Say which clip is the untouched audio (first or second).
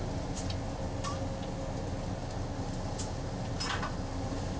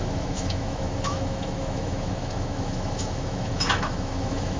first